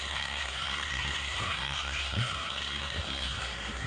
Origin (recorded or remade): remade